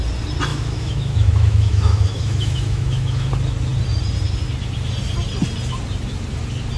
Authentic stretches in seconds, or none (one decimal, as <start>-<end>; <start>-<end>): 0.0-0.5; 3.3-6.8